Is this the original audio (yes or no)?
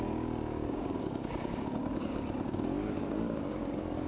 no